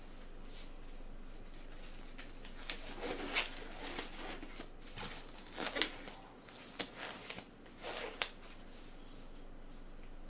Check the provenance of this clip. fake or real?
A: real